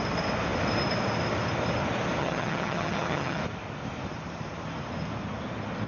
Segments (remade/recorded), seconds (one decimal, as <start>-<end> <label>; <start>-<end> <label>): 0.0-2.2 recorded; 2.2-3.4 remade; 3.4-5.9 recorded